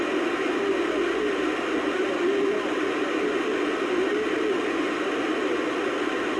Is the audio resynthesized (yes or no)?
no